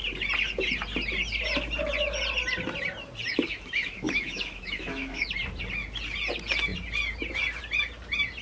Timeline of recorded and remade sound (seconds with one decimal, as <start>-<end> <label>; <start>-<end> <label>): 0.0-3.3 recorded; 3.3-5.3 remade; 5.3-8.4 recorded